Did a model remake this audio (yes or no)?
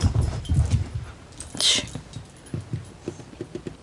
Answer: no